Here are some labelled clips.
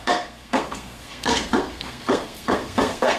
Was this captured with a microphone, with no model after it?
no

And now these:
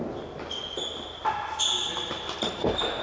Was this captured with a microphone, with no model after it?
yes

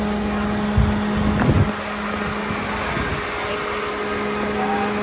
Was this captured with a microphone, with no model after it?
yes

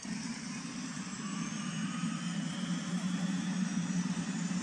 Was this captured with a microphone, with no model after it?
no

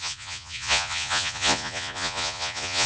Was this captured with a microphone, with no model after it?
no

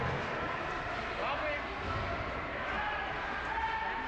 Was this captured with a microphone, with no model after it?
yes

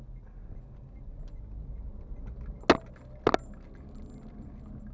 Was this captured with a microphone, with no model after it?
yes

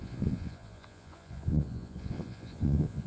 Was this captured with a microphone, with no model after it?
no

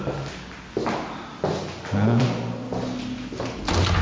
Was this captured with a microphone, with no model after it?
yes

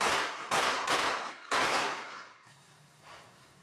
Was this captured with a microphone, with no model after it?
no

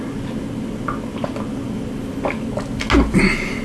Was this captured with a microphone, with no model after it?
yes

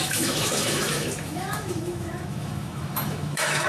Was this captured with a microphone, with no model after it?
no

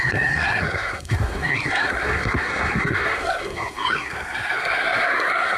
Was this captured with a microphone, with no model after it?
no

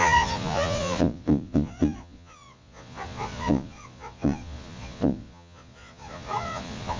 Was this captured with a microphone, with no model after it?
no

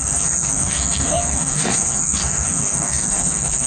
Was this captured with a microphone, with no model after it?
no